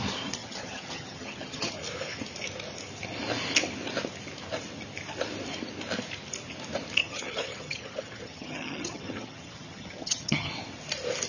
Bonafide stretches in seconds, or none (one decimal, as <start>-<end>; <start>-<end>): 0.0-0.4; 1.7-7.0; 10.5-11.3